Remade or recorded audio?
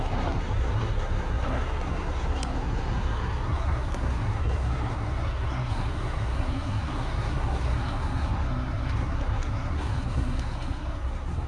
remade